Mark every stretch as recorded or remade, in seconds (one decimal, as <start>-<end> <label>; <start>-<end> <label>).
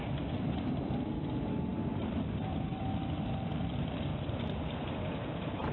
0.0-1.7 recorded; 1.7-2.8 remade; 2.8-4.1 recorded; 4.1-4.7 remade; 4.7-5.7 recorded